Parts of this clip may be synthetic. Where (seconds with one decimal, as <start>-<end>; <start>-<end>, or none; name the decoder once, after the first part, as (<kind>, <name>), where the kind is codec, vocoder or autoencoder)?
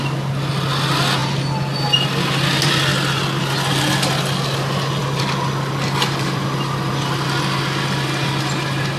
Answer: none